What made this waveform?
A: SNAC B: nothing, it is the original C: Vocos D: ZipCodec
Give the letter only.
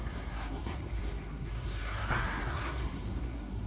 A